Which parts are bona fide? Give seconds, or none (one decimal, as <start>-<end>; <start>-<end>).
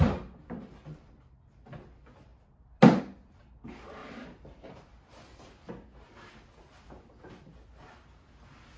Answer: 0.0-4.0; 4.8-8.8